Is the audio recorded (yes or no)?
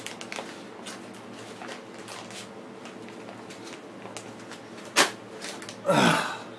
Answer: yes